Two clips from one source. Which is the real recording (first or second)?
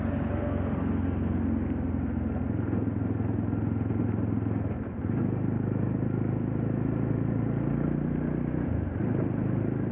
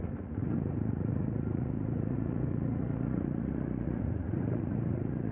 first